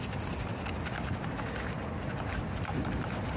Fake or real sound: real